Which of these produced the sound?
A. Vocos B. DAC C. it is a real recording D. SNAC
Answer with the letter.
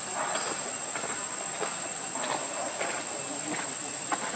C